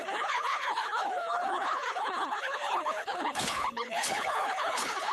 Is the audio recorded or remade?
remade